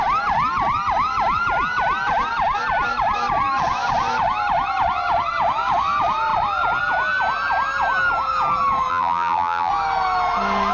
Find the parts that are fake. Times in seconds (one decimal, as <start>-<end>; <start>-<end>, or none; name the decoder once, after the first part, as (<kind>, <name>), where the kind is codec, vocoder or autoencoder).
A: 8.9-9.7 (vocoder, BigVGAN v2)